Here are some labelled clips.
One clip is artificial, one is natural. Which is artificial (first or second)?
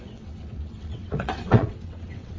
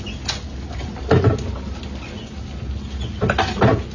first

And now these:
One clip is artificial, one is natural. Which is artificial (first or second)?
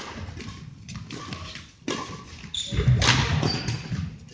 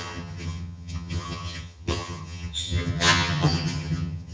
second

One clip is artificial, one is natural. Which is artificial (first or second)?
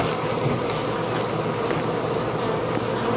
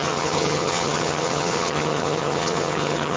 second